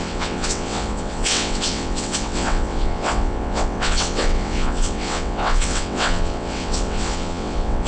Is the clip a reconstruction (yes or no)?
yes